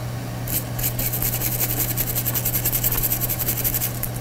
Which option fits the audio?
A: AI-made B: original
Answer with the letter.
B